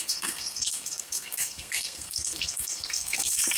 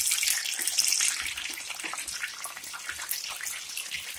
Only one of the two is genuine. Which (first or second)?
second